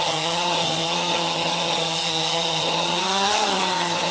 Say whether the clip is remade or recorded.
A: remade